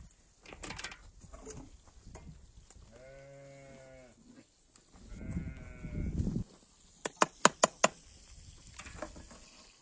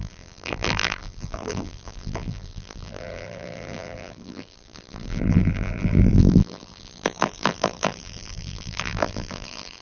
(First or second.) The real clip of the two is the first